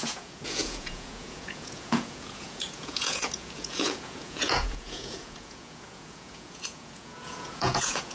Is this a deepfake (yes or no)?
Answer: yes